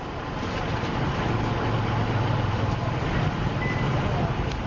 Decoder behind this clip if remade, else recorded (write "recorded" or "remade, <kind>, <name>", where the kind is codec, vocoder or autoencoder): recorded